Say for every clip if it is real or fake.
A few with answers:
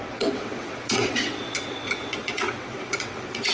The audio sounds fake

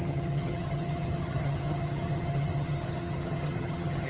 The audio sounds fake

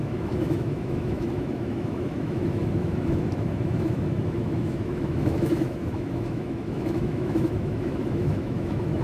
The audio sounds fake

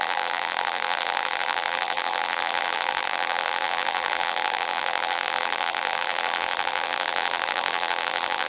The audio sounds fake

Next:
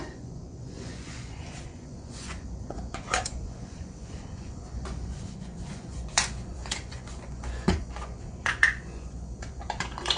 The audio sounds fake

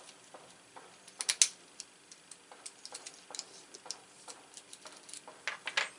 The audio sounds real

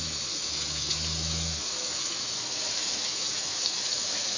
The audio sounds fake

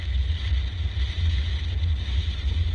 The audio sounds real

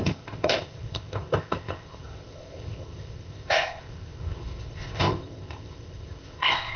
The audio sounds fake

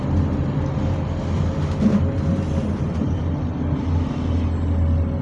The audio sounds real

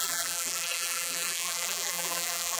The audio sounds fake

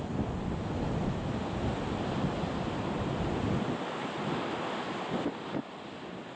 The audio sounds real